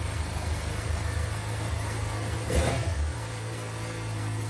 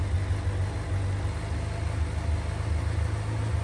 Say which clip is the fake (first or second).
first